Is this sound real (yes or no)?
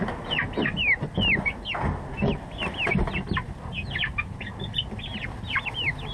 yes